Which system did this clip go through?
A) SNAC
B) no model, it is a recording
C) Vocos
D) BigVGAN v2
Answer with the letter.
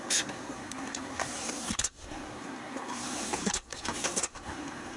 A